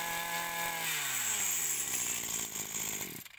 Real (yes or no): yes